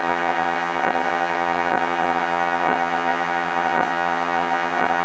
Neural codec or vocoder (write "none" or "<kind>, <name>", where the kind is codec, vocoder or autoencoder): vocoder, HiFi-GAN